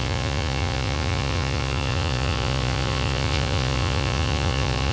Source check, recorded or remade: remade